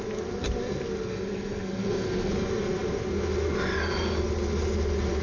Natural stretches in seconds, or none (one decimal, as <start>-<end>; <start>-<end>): 0.0-1.1; 2.3-5.2